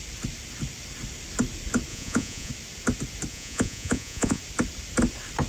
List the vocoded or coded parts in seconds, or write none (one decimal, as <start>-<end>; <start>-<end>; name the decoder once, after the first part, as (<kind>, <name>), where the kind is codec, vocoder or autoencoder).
1.9-2.5 (vocoder, Vocos); 3.3-4.4